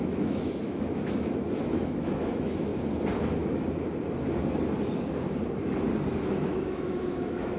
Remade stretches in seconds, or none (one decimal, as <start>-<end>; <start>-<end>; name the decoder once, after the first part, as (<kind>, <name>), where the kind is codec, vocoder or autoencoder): 0.0-2.7 (autoencoder, DAC-VAE); 6.4-7.6